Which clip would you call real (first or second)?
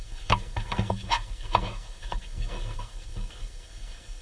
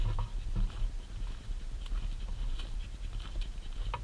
second